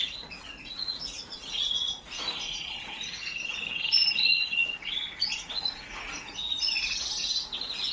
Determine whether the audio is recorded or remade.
remade